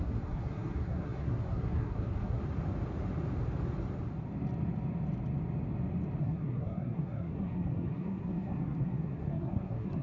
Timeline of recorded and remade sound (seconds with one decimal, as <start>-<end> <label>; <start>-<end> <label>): 0.0-2.4 remade; 2.4-6.2 recorded; 6.2-10.0 remade